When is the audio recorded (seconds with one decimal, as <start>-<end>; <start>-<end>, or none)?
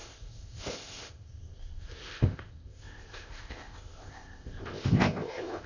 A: none